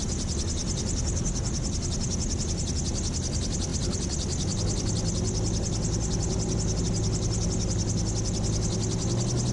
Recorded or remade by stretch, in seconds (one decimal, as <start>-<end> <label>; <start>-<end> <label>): 0.0-9.5 recorded